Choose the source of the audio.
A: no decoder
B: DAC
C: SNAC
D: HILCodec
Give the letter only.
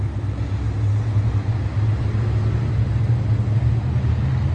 A